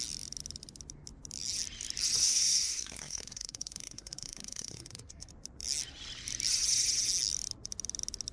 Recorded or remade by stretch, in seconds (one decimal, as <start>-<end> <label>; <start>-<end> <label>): 0.0-2.2 recorded; 2.2-5.3 remade; 5.3-8.3 recorded